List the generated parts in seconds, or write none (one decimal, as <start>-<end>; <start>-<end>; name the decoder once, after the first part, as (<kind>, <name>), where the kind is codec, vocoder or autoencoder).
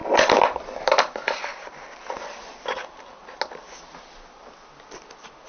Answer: none